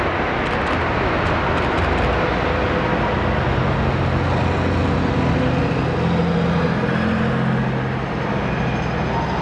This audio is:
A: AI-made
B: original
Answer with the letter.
B